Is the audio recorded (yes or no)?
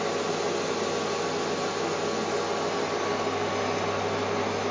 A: yes